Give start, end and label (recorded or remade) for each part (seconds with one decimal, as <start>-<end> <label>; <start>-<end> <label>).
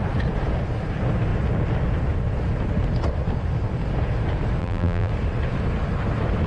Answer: 0.0-4.6 recorded; 4.6-5.1 remade; 5.1-6.5 recorded